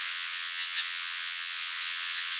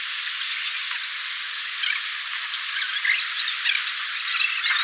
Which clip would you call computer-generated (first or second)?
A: first